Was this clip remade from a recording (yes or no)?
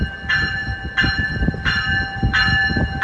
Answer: no